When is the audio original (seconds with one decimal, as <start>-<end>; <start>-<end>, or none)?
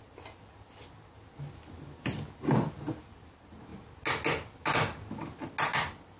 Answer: 0.0-6.2